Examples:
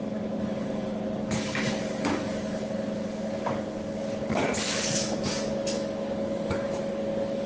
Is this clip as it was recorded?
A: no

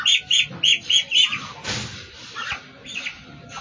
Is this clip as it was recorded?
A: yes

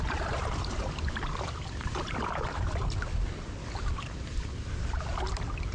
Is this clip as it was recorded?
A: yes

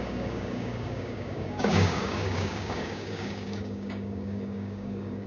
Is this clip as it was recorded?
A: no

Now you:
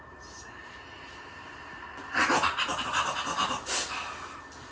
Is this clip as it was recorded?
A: yes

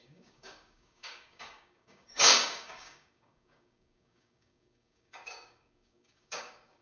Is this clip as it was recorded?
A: no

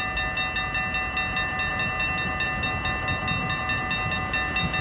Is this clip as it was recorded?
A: yes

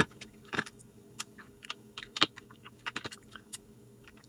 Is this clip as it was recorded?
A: no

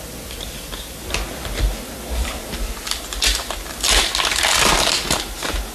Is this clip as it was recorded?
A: yes